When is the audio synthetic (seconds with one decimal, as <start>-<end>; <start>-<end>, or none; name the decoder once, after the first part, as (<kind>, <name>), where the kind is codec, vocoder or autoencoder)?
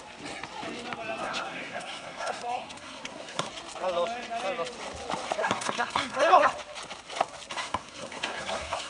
1.2-3.5 (codec, SNAC); 5.4-6.5; 7.5-8.9